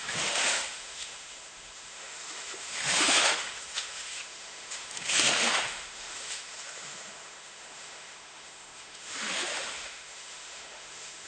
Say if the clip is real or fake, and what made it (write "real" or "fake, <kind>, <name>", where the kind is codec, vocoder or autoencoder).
fake, autoencoder, DAC-VAE